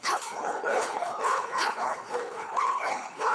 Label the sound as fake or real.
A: fake